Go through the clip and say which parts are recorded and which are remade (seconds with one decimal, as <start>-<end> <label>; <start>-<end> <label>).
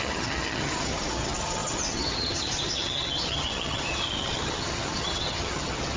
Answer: 0.0-6.0 remade